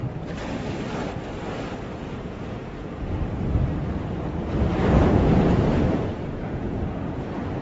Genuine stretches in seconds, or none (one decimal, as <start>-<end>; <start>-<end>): 0.0-1.9; 3.2-5.0